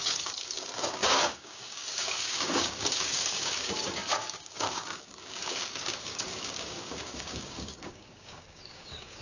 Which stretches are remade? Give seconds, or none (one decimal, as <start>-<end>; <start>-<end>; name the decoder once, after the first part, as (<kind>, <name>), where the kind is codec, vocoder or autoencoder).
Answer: 0.0-9.2 (codec, DAC)